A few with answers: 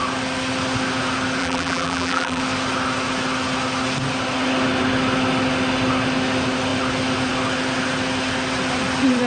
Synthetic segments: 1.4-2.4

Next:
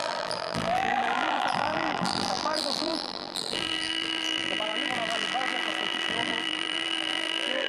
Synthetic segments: 0.0-7.7

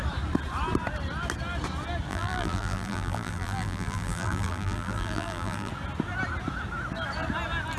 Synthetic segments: 2.1-5.7

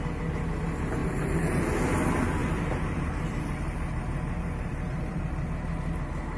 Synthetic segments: 1.0-1.6; 2.4-5.2